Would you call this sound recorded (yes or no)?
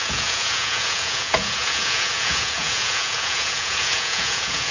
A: no